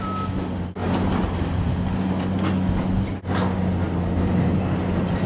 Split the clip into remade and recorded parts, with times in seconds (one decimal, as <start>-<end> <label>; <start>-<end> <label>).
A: 0.0-5.3 recorded